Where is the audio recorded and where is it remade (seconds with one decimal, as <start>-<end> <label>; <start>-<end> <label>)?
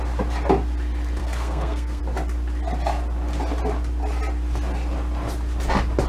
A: 0.0-1.2 recorded; 1.2-2.0 remade; 2.0-6.1 recorded